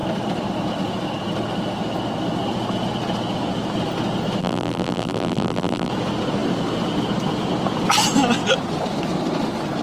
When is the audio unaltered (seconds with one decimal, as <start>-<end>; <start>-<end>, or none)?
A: 0.0-4.4; 5.9-9.8